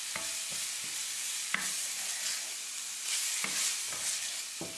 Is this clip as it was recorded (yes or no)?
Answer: yes